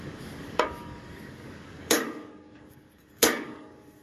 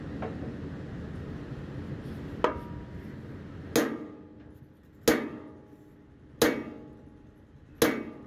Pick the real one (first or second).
second